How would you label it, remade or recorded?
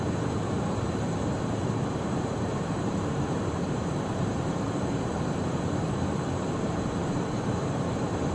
remade